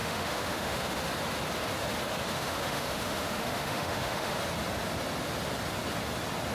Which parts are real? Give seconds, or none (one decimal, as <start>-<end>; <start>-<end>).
1.0-2.3; 4.3-6.5